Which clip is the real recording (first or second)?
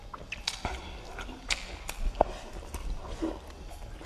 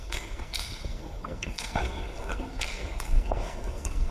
first